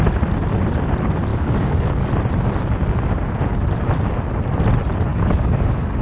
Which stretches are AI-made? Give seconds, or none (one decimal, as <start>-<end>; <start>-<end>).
1.3-2.1; 5.1-6.0